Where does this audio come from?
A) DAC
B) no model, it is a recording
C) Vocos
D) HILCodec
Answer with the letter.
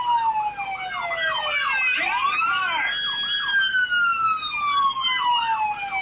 B